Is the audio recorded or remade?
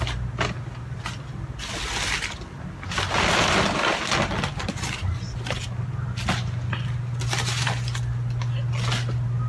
recorded